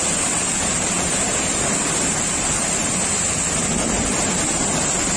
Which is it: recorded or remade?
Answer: recorded